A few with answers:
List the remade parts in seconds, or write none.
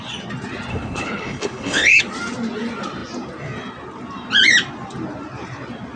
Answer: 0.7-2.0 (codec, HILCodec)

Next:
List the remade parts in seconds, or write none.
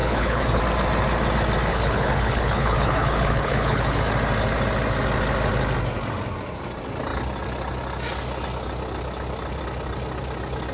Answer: 0.0-0.6 (codec, HILCodec); 1.7-4.0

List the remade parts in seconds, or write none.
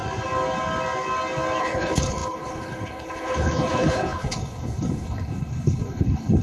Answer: 1.6-6.4 (codec, HILCodec)